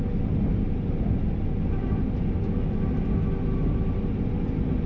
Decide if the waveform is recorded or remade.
recorded